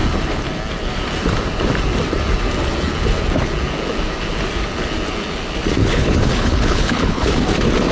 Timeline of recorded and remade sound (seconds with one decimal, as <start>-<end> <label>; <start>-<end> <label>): 0.0-5.8 recorded; 5.8-7.3 remade; 7.3-7.9 recorded